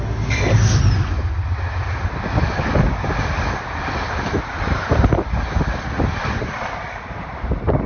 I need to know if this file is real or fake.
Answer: real